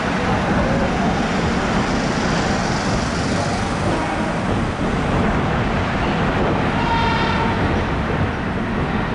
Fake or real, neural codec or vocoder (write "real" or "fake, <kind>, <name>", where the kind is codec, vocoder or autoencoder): real